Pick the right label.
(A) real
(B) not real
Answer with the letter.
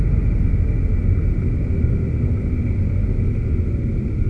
A